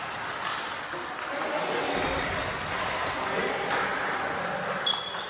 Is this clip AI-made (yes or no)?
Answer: no